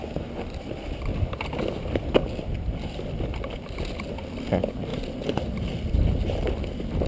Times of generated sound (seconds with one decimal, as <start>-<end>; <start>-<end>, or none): 2.2-3.8; 4.9-6.6